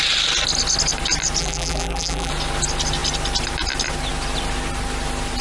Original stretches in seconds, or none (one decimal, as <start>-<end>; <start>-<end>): 0.0-1.4; 2.3-5.4